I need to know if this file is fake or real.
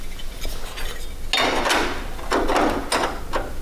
real